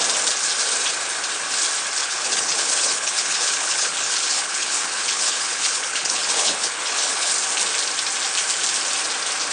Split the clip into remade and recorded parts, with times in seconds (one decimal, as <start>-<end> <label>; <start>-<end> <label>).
0.0-2.0 recorded; 2.0-7.3 remade; 7.3-9.5 recorded